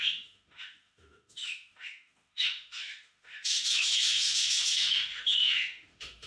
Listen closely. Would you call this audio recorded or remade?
remade